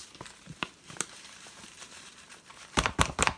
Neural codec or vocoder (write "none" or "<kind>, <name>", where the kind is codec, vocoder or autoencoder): vocoder, BigVGAN v2